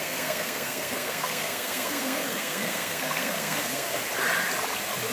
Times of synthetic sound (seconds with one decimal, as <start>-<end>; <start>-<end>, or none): 0.0-4.0